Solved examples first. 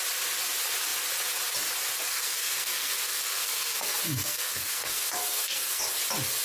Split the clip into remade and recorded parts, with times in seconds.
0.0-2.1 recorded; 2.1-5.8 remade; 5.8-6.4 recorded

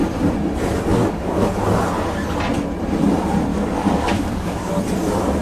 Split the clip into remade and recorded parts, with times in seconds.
0.0-0.9 recorded; 0.9-1.5 remade; 1.5-3.5 recorded; 3.5-4.7 remade; 4.7-5.4 recorded

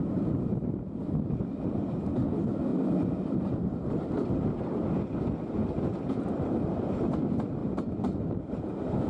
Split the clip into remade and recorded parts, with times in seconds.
0.0-7.6 recorded; 7.6-8.5 remade; 8.5-9.1 recorded

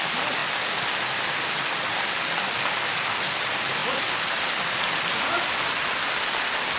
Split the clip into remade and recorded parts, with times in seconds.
0.0-6.8 recorded

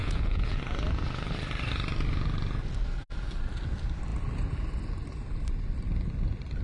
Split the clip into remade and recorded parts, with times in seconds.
0.0-0.6 remade; 0.6-6.6 recorded

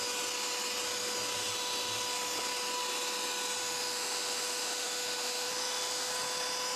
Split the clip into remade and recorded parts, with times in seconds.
0.0-3.6 recorded; 3.6-6.1 remade; 6.1-6.8 recorded

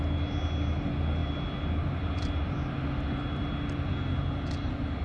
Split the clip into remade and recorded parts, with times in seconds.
0.0-5.0 recorded

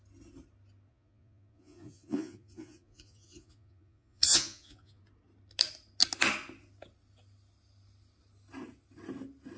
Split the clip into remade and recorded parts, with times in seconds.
0.0-0.9 recorded; 0.9-5.0 remade; 5.0-9.6 recorded